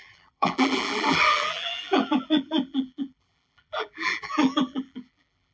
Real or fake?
fake